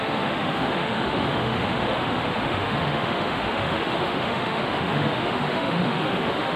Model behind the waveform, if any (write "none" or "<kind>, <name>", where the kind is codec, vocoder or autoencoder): autoencoder, DAC-VAE